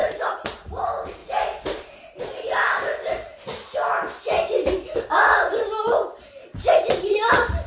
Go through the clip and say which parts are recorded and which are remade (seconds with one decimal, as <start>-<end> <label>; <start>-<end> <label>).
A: 0.0-1.2 remade; 1.2-2.1 recorded; 2.1-3.3 remade; 3.3-5.7 recorded; 5.7-7.7 remade